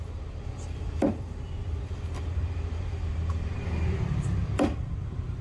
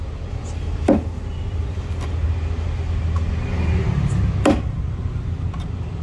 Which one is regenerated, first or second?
first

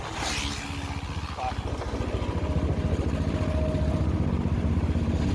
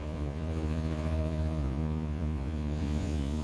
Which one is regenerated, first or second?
second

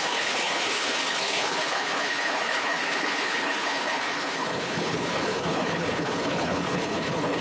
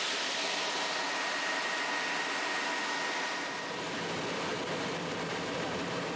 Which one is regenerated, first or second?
first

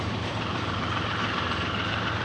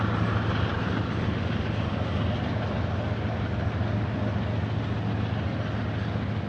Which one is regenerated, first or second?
first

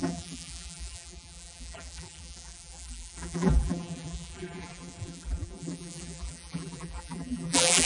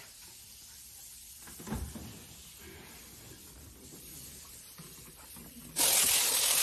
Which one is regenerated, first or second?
first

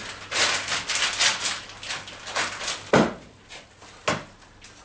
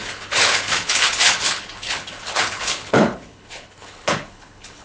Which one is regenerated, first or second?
second